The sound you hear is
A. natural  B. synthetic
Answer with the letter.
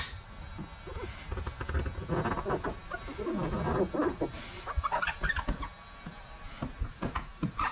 A